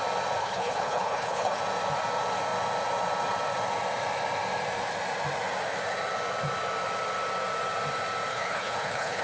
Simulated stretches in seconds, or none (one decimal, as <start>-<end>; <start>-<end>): 0.4-1.6; 8.3-9.2